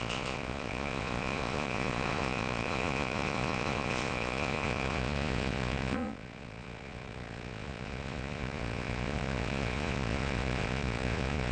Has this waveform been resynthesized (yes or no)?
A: yes